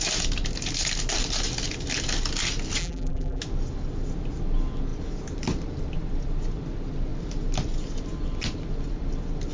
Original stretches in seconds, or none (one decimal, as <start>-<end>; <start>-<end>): 0.0-2.8; 3.4-9.5